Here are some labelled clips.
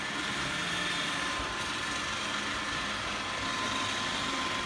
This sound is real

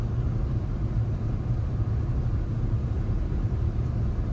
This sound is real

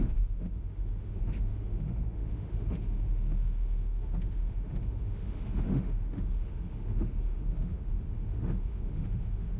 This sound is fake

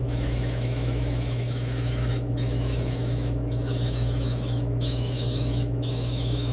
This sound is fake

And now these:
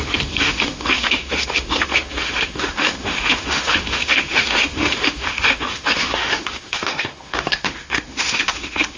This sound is fake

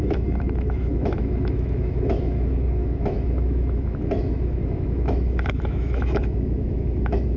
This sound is fake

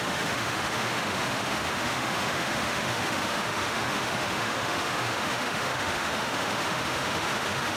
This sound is fake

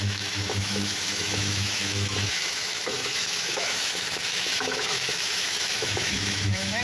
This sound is fake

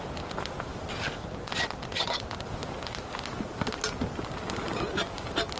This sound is real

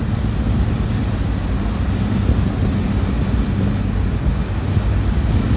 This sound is real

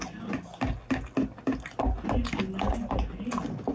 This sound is real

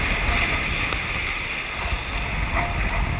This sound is real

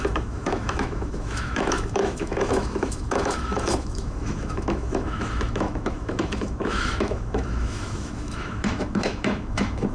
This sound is fake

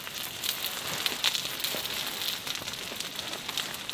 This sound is real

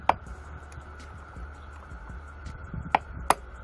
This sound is real